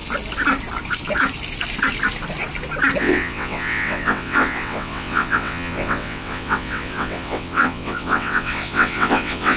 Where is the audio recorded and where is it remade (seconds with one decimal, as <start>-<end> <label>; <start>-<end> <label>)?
0.0-3.0 recorded; 3.0-9.6 remade